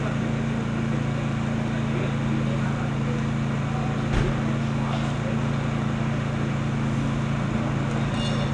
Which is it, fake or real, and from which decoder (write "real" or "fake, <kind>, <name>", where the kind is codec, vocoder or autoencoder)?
real